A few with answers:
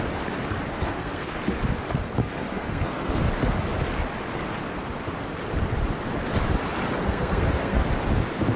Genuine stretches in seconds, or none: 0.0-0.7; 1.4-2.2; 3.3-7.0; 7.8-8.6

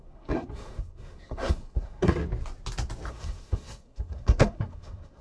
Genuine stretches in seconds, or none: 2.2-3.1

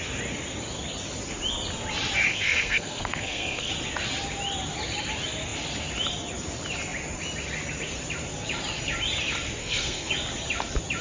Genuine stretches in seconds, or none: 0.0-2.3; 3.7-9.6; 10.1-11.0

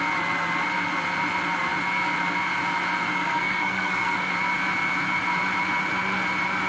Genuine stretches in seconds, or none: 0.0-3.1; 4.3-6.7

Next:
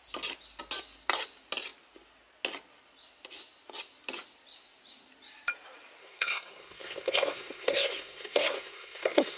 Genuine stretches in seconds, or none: 0.0-6.0